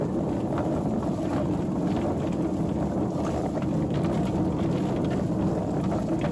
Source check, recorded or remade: recorded